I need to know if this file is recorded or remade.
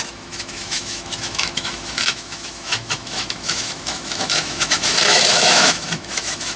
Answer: remade